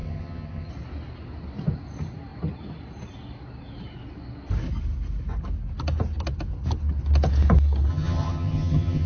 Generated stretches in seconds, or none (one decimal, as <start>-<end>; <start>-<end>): 0.0-0.7; 7.9-9.1